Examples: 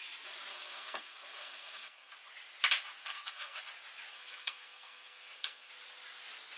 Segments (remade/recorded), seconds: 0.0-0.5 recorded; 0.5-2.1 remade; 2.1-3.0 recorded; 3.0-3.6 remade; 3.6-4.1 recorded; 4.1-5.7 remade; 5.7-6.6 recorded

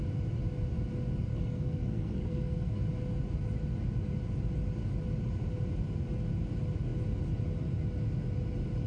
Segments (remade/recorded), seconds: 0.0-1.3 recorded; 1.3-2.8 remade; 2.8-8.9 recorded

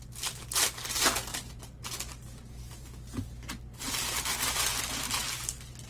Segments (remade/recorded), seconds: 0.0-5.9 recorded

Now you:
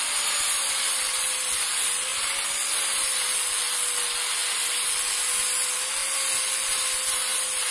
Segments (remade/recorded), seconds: 0.0-7.7 recorded

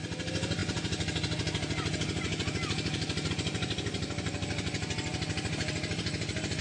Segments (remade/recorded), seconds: 0.0-6.6 recorded

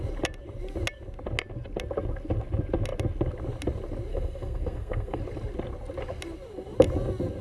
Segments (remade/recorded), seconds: 0.0-4.1 recorded; 4.1-5.2 remade; 5.2-7.4 recorded

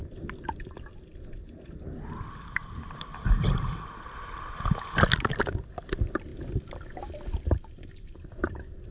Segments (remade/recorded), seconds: 0.0-8.9 recorded